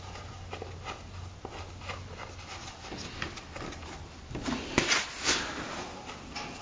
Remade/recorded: recorded